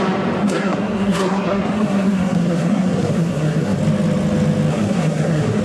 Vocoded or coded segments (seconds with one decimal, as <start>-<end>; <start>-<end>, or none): 0.4-3.8; 4.7-5.6